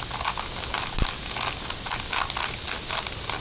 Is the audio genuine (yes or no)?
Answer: yes